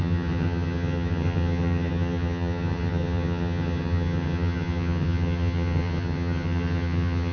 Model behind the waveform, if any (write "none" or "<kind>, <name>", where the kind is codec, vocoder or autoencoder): vocoder, HiFi-GAN